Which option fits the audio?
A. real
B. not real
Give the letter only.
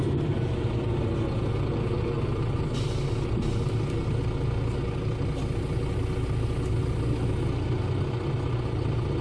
A